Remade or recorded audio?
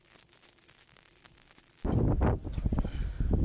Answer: recorded